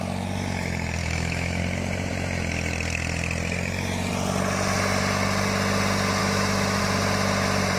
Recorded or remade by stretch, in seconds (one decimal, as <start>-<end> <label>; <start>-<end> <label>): 0.0-1.0 recorded; 1.0-1.6 remade; 1.6-6.2 recorded; 6.2-6.8 remade; 6.8-7.8 recorded